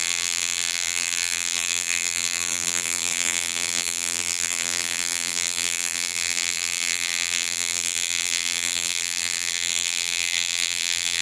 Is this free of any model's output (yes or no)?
no